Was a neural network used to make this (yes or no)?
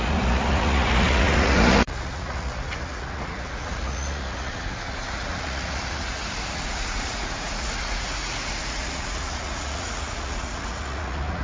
yes